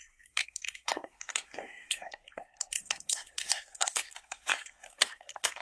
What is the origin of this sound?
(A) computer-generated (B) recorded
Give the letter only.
A